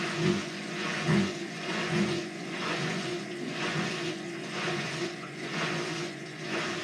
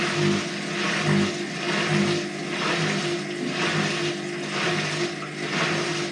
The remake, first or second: first